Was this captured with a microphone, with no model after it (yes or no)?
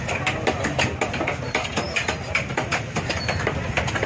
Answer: yes